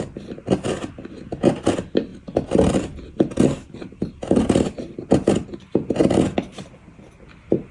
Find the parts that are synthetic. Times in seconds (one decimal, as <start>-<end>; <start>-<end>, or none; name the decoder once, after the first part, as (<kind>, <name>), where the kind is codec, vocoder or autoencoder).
none